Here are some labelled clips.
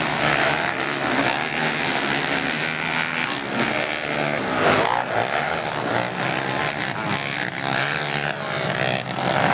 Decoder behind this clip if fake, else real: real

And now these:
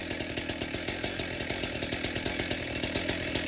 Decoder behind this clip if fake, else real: real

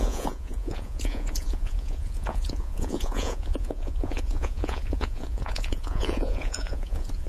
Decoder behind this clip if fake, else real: fake, vocoder, Vocos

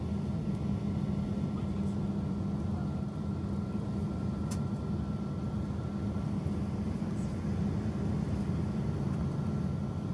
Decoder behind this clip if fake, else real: real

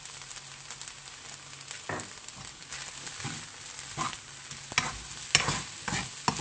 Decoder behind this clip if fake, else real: real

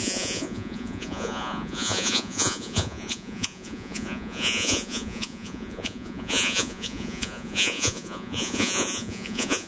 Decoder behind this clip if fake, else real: fake, vocoder, Vocos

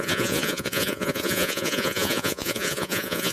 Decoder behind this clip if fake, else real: fake, vocoder, Vocos